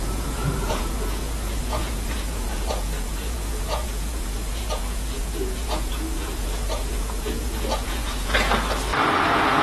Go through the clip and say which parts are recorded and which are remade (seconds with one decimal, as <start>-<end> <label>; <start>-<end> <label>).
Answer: 0.0-8.5 remade; 8.5-9.2 recorded; 9.2-9.6 remade